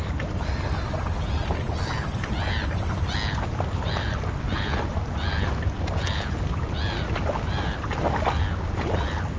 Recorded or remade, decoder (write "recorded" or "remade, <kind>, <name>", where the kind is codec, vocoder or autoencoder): recorded